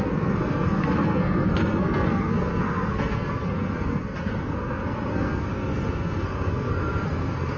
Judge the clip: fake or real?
fake